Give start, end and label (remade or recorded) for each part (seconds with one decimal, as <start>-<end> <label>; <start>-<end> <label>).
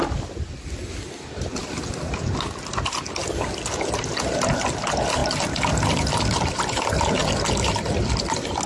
0.0-8.7 recorded